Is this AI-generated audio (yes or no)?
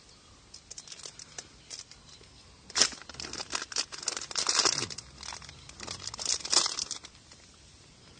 no